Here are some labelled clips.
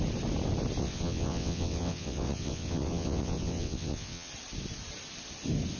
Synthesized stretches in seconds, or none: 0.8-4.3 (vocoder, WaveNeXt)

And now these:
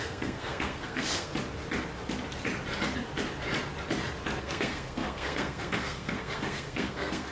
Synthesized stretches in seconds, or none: 0.0-1.3 (codec, SNAC); 4.4-7.3

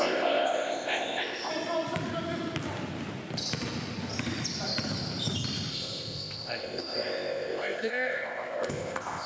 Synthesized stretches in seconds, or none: 0.0-1.5 (codec, ZipCodec); 5.7-9.3

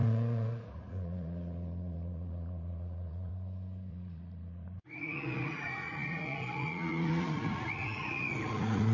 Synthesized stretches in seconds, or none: 0.0-3.3 (vocoder, Vocos); 3.9-8.9

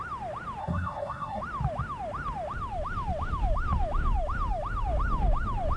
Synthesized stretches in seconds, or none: 0.6-1.4 (codec, SNAC)